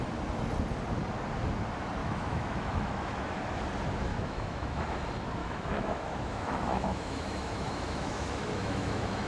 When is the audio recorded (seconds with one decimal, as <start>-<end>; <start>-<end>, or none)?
0.0-2.0; 3.4-4.1; 4.8-5.4

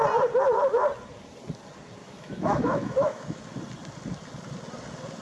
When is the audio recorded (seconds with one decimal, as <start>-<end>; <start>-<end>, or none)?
0.0-2.0; 3.4-5.2

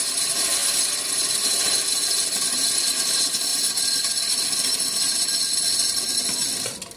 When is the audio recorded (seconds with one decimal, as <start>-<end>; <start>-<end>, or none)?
0.0-7.0

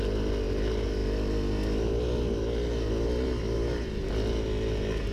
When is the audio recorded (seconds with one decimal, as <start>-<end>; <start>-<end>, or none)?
0.0-5.1